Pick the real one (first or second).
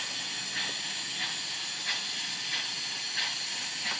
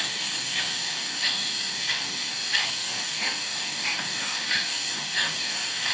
first